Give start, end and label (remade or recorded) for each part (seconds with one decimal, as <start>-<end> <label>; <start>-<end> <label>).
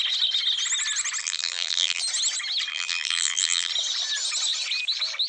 0.0-1.2 recorded; 1.2-2.0 remade; 2.0-2.7 recorded; 2.7-3.7 remade; 3.7-5.3 recorded